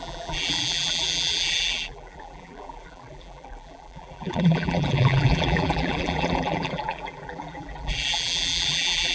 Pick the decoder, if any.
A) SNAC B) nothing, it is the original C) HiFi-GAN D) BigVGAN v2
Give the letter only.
D